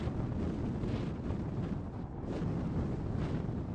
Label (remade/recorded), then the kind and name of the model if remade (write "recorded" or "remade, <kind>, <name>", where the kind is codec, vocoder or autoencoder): recorded